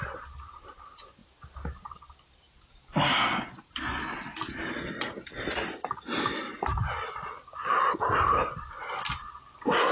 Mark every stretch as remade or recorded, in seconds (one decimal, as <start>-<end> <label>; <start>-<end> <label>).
0.0-9.9 recorded